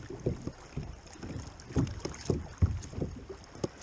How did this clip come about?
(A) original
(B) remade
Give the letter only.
A